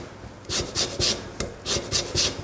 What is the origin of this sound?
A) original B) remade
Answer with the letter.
A